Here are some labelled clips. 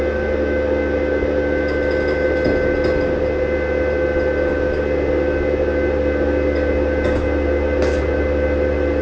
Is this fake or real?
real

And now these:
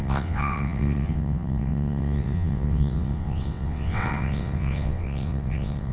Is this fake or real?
fake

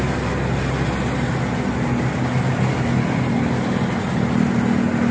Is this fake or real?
real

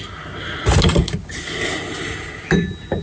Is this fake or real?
real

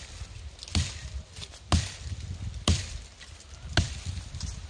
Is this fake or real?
real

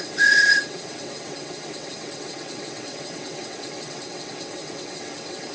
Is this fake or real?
fake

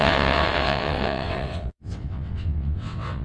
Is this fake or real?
fake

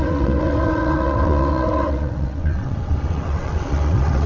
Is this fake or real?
fake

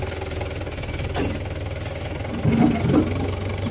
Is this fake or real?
real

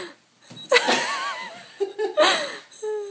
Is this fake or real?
real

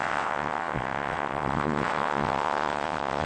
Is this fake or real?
fake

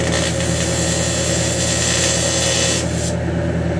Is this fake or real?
real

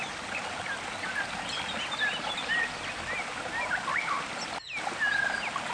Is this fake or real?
real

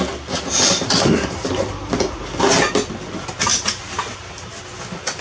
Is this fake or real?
real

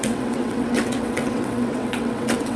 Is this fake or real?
fake